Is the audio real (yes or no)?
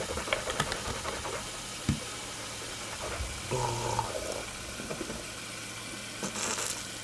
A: yes